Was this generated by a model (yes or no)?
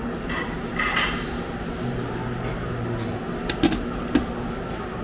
no